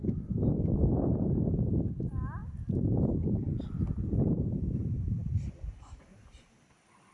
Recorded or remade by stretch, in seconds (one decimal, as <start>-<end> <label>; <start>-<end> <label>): 0.0-0.8 recorded; 0.8-1.5 remade; 1.5-2.4 recorded; 2.4-6.0 remade; 6.0-7.1 recorded